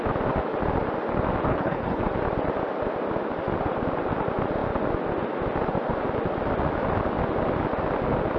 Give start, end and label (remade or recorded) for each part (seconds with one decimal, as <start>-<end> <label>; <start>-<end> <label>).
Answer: 0.0-1.5 recorded; 1.5-2.0 remade; 2.0-8.4 recorded